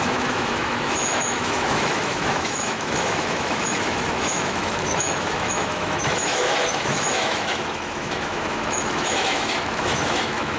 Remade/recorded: remade